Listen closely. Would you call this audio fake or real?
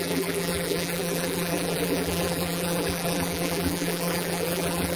fake